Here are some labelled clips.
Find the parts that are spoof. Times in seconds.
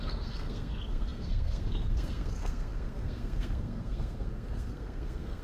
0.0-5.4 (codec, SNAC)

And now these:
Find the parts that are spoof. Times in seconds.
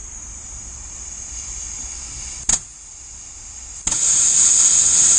none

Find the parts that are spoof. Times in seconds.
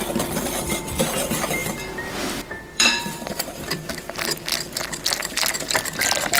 1.6-3.9 (vocoder, BigVGAN v2)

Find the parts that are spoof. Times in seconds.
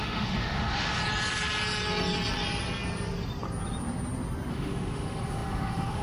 0.0-1.0 (autoencoder, DAC-VAE); 4.5-6.0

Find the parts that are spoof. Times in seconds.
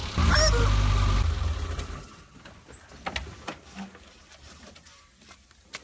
none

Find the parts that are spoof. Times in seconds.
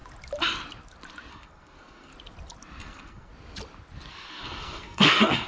1.3-2.1 (codec, SNAC); 2.8-3.3; 4.1-5.5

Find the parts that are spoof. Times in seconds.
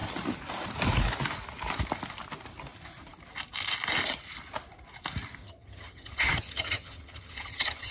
5.4-7.9 (vocoder, HiFi-GAN)